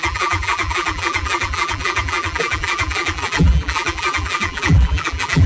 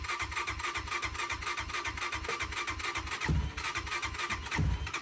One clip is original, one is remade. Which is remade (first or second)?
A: first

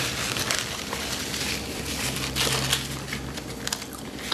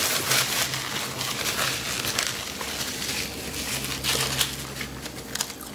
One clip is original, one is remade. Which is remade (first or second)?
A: first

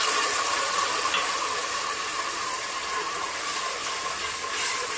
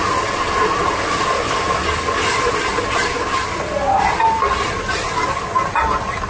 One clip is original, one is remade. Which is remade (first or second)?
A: first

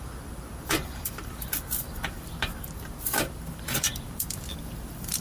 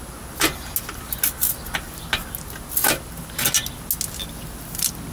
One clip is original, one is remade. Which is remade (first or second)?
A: first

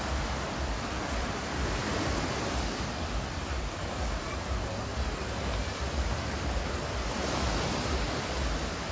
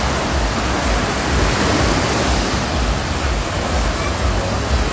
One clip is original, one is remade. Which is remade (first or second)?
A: first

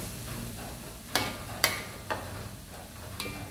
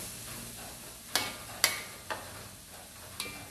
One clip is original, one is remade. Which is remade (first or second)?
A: first